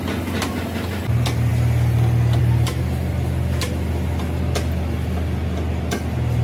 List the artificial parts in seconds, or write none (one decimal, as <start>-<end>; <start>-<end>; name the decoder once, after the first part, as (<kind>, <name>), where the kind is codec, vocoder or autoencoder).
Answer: none